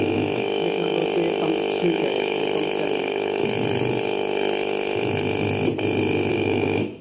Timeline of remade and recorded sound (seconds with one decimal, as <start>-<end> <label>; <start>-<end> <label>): 0.0-1.0 remade; 1.0-1.8 recorded; 1.8-2.4 remade; 2.4-3.0 recorded; 3.0-3.4 remade; 3.4-6.3 recorded; 6.3-7.0 remade